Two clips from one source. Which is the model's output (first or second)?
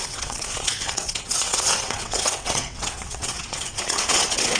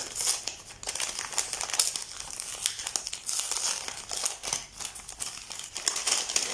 first